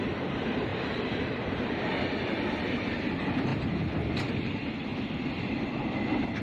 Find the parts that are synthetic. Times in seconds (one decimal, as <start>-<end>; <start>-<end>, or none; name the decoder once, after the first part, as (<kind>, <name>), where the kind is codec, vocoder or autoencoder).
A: 0.0-0.7 (vocoder, BigVGAN v2); 1.5-3.5; 4.0-4.9; 6.0-6.4